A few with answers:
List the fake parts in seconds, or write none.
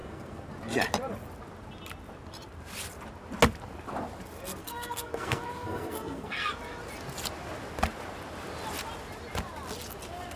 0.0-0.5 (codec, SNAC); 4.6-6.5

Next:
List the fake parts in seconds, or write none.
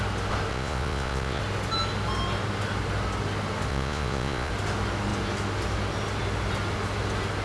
0.5-1.4 (vocoder, Vocos); 3.7-4.5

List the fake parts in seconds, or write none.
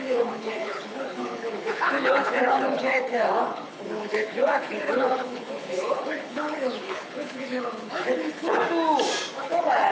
0.0-8.6 (codec, HILCodec); 9.4-9.9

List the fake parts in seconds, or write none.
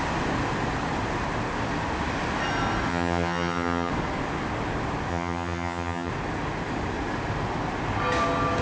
2.9-3.9 (vocoder, HiFi-GAN); 5.1-6.1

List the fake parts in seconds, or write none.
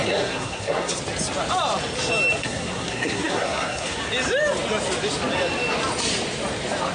0.0-1.0 (codec, SNAC); 2.4-4.0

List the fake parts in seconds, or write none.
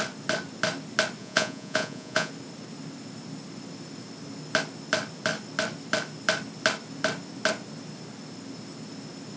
1.2-2.3 (vocoder, Vocos)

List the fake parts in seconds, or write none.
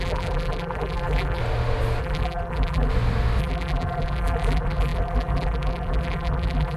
0.0-1.4 (vocoder, BigVGAN v2); 2.0-2.9; 3.4-6.8